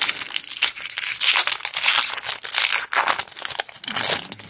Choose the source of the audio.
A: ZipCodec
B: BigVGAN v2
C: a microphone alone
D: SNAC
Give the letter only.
C